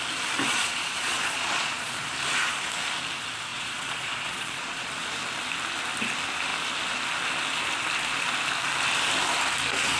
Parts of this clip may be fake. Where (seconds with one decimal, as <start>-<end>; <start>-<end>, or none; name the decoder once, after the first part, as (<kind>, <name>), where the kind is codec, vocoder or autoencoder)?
0.5-2.1 (vocoder, Vocos); 3.5-4.9